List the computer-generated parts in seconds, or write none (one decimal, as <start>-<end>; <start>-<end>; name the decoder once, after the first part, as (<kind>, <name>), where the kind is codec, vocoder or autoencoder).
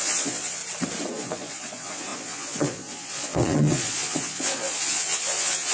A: 0.0-0.6 (vocoder, Vocos); 1.1-5.7